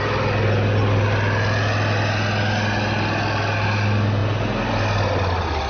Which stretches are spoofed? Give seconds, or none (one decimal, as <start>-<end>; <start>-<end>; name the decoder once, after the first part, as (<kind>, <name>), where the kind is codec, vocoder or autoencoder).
none